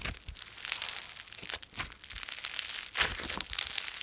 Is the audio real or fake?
real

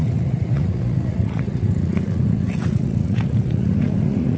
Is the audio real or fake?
fake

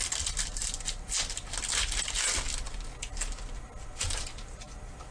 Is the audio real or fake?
real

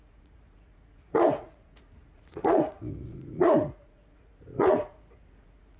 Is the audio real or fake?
fake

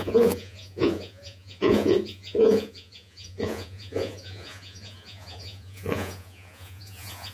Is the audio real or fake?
fake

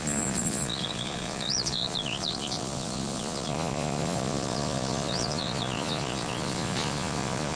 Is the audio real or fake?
fake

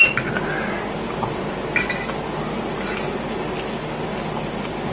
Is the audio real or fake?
real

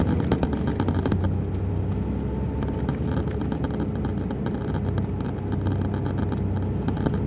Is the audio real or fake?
real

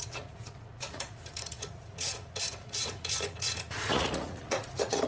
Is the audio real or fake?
fake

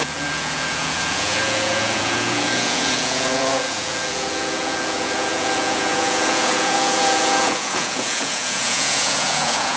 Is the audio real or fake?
fake